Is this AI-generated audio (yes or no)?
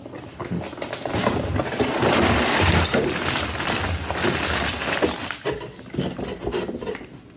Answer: no